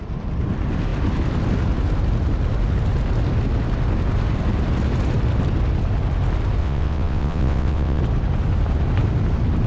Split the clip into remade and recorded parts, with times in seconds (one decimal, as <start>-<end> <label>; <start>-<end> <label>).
0.0-6.6 recorded; 6.6-8.0 remade; 8.0-9.7 recorded